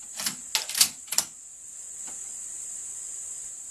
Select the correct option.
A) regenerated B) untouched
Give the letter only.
B